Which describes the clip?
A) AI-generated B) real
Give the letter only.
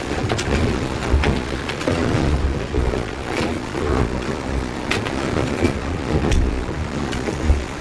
A